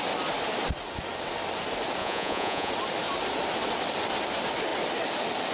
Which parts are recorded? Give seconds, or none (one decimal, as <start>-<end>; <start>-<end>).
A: 0.0-2.0; 2.7-5.5